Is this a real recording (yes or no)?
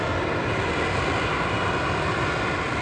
yes